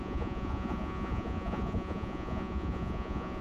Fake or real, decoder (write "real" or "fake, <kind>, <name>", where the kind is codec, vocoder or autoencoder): fake, vocoder, Vocos